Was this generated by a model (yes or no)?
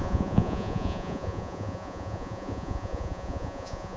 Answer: yes